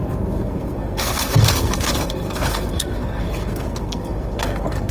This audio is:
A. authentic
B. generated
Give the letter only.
B